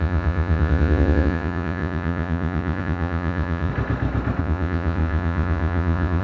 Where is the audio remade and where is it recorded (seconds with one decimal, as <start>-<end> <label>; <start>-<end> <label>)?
0.0-3.7 remade; 3.7-4.4 recorded; 4.4-6.2 remade